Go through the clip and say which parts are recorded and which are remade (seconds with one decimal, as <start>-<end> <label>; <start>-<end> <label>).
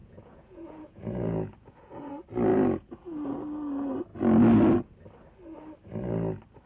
0.0-2.1 remade; 2.1-2.5 recorded; 2.5-3.3 remade; 3.3-6.7 recorded